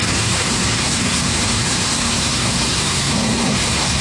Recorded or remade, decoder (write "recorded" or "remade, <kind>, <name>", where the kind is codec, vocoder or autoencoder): remade, codec, SNAC